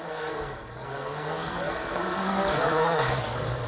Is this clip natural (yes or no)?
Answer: no